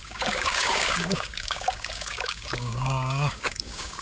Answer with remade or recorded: remade